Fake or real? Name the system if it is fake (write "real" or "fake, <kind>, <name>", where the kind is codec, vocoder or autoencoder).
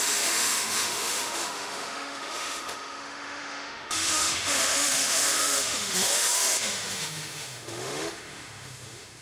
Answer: fake, autoencoder, DAC-VAE